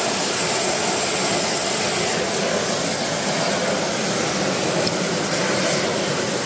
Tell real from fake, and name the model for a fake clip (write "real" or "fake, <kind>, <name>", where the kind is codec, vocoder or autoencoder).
real